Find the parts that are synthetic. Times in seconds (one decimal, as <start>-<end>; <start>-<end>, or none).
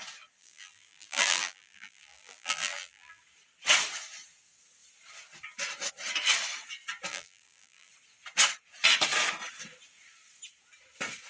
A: 0.4-3.2; 7.1-7.9